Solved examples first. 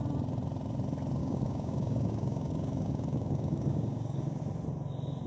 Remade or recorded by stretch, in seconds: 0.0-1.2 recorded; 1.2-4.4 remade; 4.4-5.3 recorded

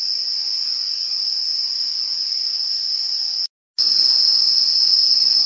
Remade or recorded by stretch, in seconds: 0.0-5.5 recorded

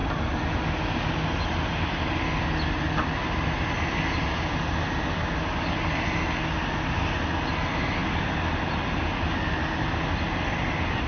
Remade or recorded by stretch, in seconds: 0.0-11.1 recorded

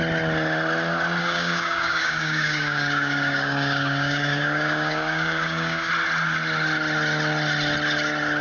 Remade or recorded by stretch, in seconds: 0.0-1.2 recorded; 1.2-5.9 remade; 5.9-8.4 recorded

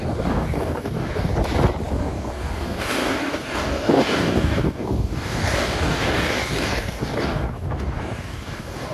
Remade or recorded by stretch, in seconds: 0.0-1.3 remade; 1.3-1.9 recorded; 1.9-8.9 remade